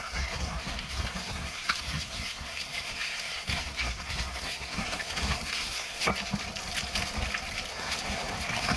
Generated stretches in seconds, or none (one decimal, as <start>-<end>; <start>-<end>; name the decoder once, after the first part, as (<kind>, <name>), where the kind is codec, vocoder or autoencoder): 0.0-6.1 (codec, SNAC); 7.7-8.8

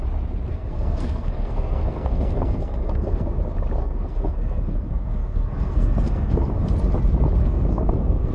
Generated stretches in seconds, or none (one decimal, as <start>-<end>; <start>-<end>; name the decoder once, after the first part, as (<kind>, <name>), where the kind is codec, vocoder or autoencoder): 0.5-3.4 (codec, SNAC); 3.8-6.7; 7.4-8.3

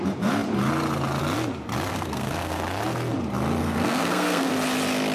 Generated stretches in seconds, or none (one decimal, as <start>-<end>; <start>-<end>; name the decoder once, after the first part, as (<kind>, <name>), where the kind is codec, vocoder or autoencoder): 1.9-2.6 (codec, SNAC); 3.6-4.5

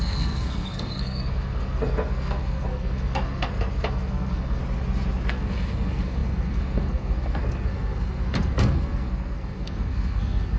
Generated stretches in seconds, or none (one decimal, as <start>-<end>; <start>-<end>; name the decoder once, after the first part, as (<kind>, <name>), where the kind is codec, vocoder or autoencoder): 0.0-4.6 (codec, SNAC); 5.3-10.6

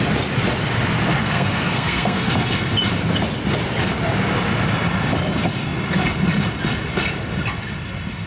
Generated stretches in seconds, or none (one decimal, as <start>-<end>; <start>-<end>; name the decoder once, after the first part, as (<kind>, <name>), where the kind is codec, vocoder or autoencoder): 1.2-2.3 (codec, SNAC)